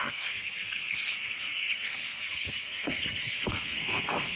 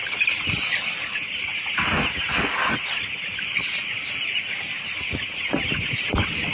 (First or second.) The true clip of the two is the second